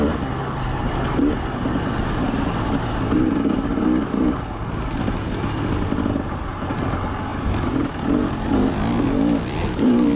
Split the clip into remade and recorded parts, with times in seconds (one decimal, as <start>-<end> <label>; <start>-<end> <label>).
0.0-10.2 recorded